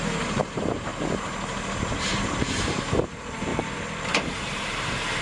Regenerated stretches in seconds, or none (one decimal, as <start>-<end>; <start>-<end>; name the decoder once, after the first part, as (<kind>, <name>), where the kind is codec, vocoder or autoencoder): 0.0-0.9 (vocoder, BigVGAN v2); 2.2-3.5; 4.0-5.2